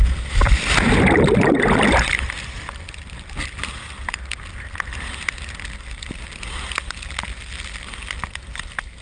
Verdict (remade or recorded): recorded